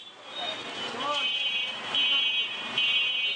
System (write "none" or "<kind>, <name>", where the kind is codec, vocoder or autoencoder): none